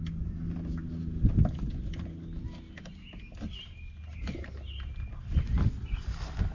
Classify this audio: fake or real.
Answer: real